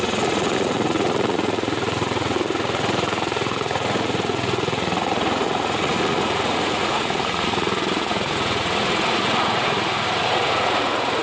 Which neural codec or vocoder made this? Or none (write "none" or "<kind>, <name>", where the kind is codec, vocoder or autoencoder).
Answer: vocoder, Vocos